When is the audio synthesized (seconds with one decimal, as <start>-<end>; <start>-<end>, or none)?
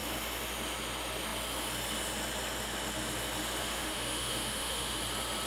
3.6-5.0